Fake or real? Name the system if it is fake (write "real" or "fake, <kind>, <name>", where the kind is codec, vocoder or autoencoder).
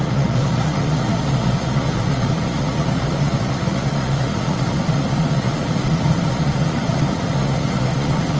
fake, vocoder, Vocos